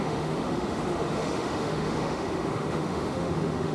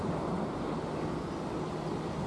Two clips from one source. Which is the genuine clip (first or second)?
second